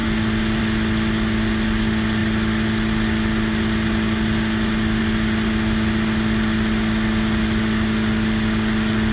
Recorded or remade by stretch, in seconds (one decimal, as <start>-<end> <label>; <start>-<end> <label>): 0.0-9.1 recorded

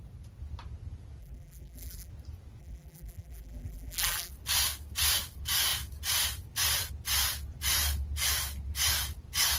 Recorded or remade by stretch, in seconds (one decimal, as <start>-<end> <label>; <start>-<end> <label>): 0.0-1.2 recorded; 1.2-2.1 remade; 2.1-2.6 recorded; 2.6-4.3 remade; 4.3-9.6 recorded

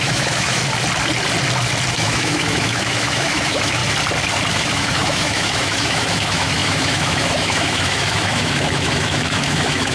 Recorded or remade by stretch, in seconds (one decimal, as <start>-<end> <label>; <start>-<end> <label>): 0.0-0.6 remade; 0.6-1.9 recorded; 1.9-3.8 remade; 3.8-4.5 recorded; 4.5-9.9 remade

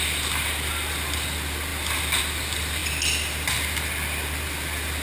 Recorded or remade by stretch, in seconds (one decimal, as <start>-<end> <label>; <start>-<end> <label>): 0.0-5.0 recorded

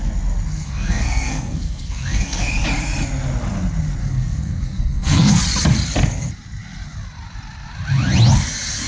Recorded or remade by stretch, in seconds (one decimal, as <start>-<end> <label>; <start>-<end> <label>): 0.0-0.5 recorded; 0.5-2.5 remade; 2.5-4.0 recorded; 4.0-5.4 remade; 5.4-8.9 recorded

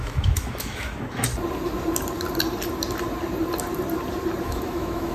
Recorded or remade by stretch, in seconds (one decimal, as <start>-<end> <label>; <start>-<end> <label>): 0.0-1.3 remade; 1.3-4.4 recorded; 4.4-5.1 remade

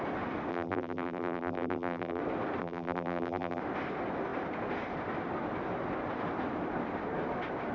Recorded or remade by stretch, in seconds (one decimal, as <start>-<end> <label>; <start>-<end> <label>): 0.0-0.5 recorded; 0.5-2.2 remade; 2.2-2.6 recorded; 2.6-3.6 remade; 3.6-7.7 recorded